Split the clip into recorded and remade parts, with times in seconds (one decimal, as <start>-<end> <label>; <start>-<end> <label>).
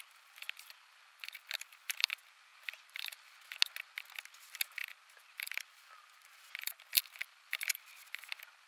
0.0-2.1 remade; 2.1-2.5 recorded; 2.5-3.3 remade; 3.3-4.8 recorded; 4.8-8.7 remade